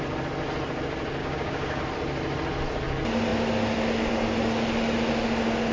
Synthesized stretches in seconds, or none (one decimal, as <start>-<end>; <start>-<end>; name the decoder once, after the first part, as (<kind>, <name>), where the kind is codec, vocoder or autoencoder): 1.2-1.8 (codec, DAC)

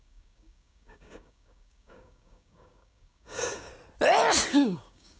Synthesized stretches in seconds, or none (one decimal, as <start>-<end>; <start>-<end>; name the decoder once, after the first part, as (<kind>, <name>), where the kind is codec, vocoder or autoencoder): 0.0-3.7 (codec, DAC); 4.5-5.2

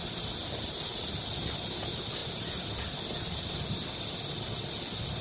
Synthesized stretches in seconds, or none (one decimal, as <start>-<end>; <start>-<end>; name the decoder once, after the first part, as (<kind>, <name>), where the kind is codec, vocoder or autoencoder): none

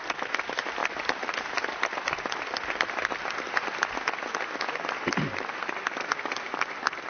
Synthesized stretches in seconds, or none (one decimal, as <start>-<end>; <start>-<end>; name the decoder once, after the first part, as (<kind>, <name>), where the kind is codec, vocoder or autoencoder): none

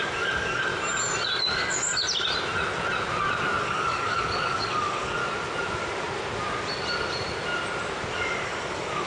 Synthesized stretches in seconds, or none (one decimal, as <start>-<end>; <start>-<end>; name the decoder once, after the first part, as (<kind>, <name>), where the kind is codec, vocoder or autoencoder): 0.0-0.7 (codec, DAC); 1.4-1.9; 3.6-5.2; 8.1-9.1

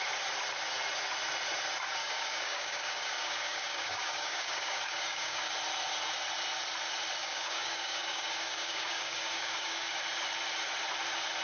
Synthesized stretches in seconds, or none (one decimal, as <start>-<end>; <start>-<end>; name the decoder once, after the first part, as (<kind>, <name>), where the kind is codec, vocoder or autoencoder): 2.0-5.5 (codec, DAC); 7.2-10.0

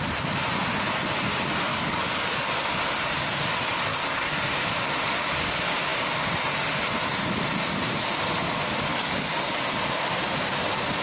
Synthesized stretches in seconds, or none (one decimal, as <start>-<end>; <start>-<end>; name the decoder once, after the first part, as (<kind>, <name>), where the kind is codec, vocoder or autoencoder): 1.7-2.5 (codec, DAC); 3.9-4.4; 8.9-9.6

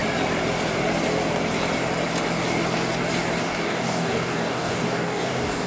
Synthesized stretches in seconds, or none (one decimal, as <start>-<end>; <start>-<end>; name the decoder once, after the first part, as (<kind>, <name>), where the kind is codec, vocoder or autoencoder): 3.4-5.7 (codec, DAC)